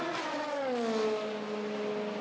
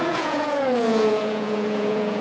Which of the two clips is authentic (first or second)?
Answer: first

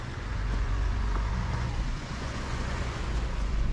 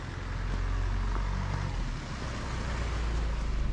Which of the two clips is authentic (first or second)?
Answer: second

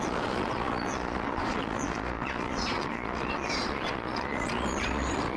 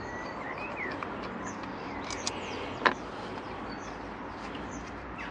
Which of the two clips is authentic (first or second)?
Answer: second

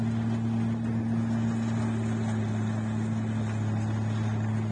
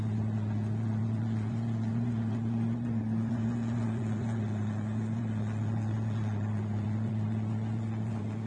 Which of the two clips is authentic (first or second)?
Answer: first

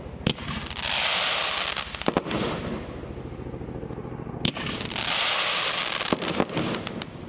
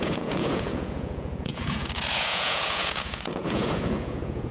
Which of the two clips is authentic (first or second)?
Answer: first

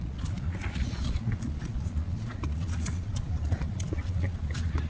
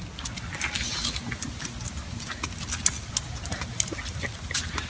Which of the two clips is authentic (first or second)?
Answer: second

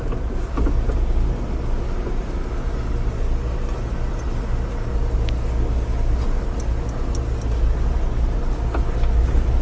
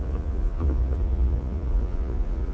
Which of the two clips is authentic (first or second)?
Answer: first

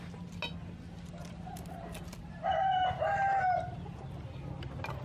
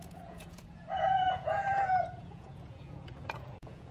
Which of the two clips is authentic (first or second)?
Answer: first